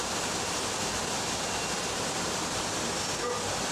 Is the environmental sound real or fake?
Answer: real